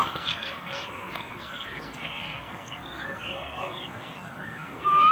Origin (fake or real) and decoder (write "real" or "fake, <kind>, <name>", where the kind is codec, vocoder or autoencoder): fake, codec, SNAC